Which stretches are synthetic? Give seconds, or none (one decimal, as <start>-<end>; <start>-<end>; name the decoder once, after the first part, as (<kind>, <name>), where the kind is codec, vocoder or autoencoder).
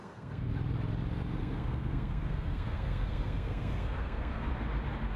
0.0-0.5 (codec, SNAC); 1.4-4.5